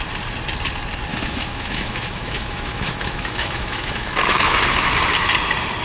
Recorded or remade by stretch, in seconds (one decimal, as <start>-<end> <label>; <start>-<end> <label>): 0.0-1.1 recorded; 1.1-4.6 remade; 4.6-5.8 recorded